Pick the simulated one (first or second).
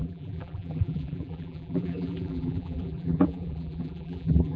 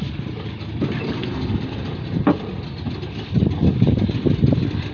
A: first